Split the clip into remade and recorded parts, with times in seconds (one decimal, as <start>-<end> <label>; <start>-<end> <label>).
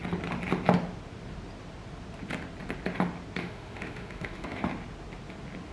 0.0-3.4 recorded; 3.4-4.7 remade; 4.7-5.7 recorded